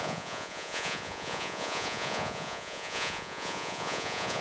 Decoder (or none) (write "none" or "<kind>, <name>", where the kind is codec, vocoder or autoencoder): vocoder, Vocos